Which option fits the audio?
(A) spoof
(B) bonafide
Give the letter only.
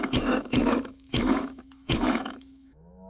A